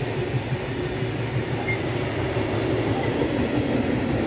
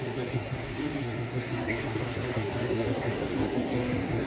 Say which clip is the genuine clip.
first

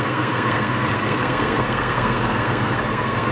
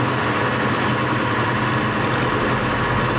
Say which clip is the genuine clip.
second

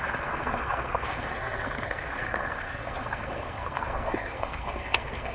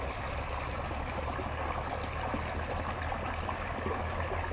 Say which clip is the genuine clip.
second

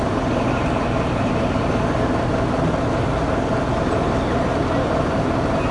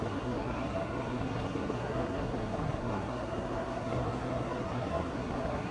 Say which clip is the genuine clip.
first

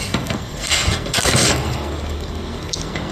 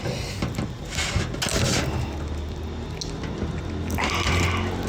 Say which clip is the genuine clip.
second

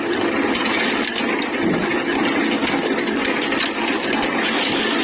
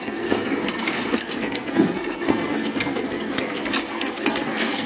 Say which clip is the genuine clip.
first